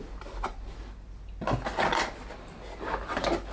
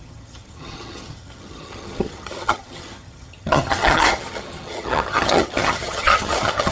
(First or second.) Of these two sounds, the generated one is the second